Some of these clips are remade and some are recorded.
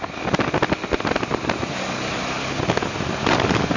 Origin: recorded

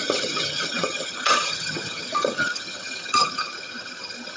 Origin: remade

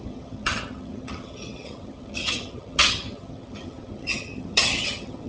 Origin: remade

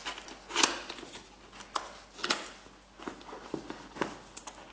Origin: recorded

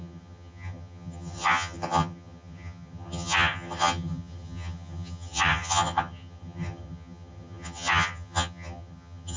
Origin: remade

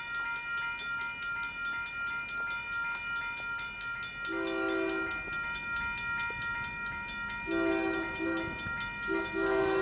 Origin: recorded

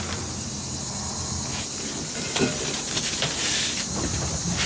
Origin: recorded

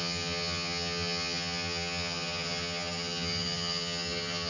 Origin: remade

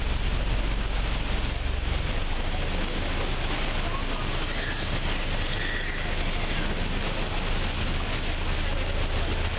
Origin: recorded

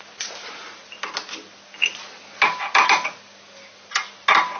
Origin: recorded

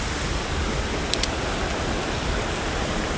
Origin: recorded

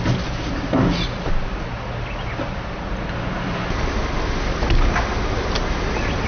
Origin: recorded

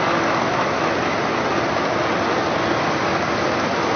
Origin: recorded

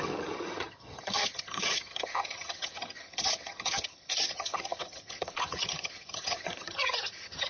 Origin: remade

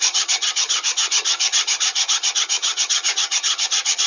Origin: remade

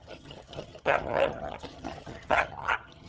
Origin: remade